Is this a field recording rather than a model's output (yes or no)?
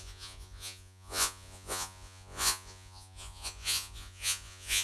no